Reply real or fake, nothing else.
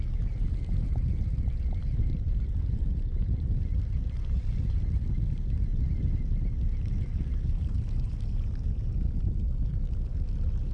real